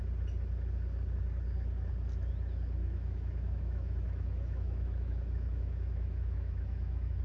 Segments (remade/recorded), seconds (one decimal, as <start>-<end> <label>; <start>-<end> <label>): 0.0-2.8 recorded; 2.8-7.2 remade